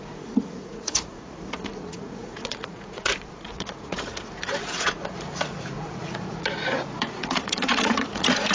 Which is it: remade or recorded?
remade